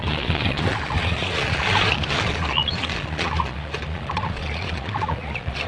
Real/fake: fake